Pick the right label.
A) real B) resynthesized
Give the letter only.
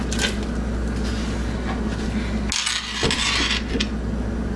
A